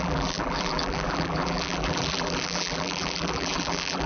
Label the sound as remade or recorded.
remade